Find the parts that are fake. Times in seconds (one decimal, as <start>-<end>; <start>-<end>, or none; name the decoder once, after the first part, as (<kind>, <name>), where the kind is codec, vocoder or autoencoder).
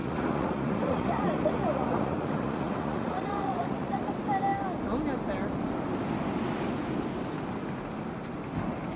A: 0.0-4.1 (vocoder, Vocos)